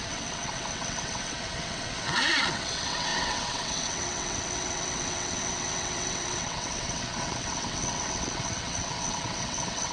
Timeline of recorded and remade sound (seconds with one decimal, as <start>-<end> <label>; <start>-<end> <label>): 0.0-9.9 remade